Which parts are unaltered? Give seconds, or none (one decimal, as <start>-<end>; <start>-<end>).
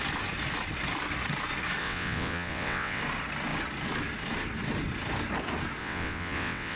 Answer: 0.0-1.8; 3.0-5.8